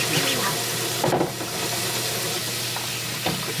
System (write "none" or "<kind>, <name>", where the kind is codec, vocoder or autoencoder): none